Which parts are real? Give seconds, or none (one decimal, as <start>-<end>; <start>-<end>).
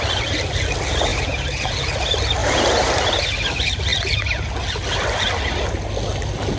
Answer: 0.0-1.1; 1.7-2.4; 3.2-6.6